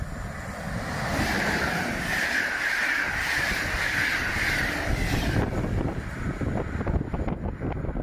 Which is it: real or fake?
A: fake